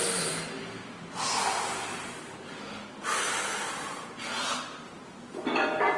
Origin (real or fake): real